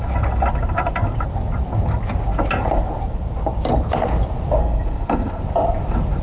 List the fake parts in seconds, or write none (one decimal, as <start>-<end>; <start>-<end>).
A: 4.6-5.4